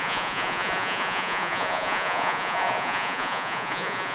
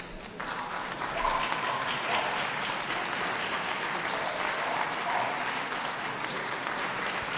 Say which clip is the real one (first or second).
second